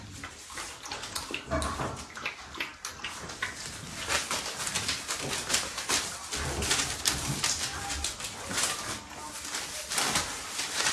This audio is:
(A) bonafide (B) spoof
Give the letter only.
A